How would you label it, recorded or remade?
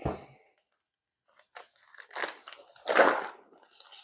recorded